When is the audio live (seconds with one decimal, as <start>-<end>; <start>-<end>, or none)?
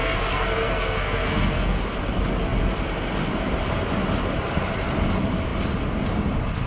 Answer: 1.8-6.7